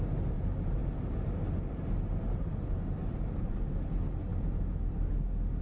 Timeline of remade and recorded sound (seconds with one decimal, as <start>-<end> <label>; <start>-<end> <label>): 0.0-5.6 recorded